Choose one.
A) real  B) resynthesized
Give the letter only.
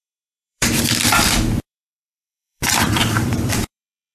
B